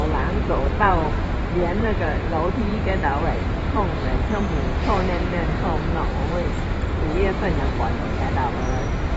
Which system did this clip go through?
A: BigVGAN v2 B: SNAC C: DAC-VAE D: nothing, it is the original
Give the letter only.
A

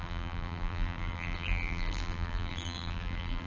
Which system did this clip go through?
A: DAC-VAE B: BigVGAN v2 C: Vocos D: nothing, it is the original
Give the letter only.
B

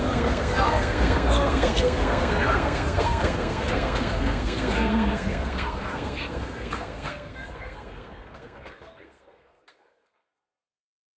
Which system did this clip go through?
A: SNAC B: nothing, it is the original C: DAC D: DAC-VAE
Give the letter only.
A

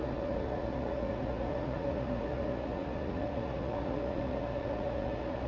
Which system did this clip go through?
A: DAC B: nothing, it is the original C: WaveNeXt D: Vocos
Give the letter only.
D